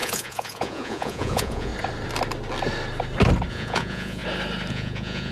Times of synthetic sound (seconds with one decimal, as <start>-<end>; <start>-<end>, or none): 0.0-1.7; 3.5-4.2; 4.7-5.3